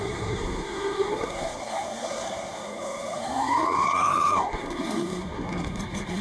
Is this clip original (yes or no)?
no